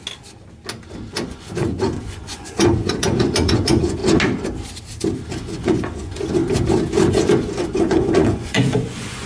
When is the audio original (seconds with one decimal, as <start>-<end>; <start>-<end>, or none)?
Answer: 0.0-1.1; 4.0-5.3; 6.4-7.1